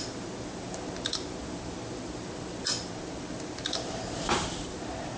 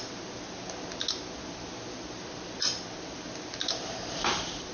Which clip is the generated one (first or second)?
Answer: first